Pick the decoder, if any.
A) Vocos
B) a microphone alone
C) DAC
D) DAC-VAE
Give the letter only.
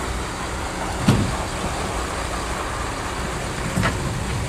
B